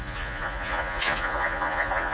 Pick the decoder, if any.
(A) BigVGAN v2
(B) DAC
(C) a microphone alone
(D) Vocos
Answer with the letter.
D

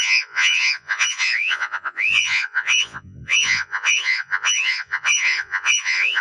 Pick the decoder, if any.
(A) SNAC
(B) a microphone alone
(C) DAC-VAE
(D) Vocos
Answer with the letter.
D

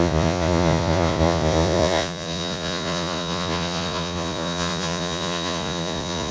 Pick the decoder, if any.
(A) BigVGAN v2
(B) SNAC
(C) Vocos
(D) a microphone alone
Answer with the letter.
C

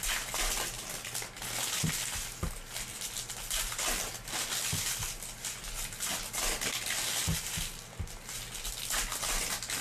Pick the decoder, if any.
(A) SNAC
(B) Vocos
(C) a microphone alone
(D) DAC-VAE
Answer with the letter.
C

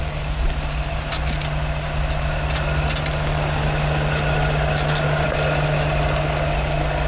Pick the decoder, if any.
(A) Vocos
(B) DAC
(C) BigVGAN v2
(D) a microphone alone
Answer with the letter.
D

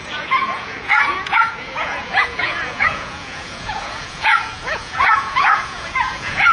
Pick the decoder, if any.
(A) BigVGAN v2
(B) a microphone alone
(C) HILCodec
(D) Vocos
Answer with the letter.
D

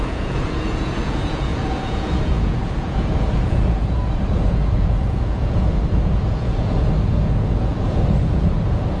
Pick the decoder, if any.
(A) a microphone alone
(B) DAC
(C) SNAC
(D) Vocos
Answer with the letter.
D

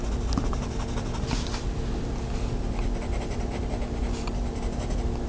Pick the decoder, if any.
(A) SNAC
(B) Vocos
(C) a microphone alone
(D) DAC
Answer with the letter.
C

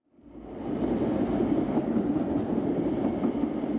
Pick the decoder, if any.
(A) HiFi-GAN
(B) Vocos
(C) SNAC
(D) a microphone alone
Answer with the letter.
D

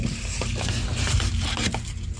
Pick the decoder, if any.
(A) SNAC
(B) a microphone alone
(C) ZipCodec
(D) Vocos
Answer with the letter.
B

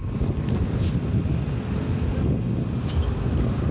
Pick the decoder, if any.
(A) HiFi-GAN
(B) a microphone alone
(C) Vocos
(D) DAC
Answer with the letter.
B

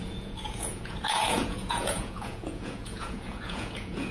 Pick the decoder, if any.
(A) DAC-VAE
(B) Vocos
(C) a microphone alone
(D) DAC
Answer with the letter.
B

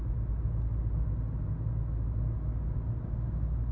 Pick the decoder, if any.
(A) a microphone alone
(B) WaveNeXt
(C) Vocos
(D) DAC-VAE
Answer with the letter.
A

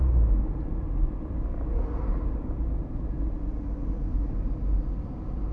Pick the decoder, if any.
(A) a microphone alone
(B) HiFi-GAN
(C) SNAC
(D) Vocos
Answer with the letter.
A